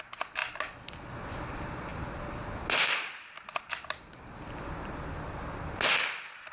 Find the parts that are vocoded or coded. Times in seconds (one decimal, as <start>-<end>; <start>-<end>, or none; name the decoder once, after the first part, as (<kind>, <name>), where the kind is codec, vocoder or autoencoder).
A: none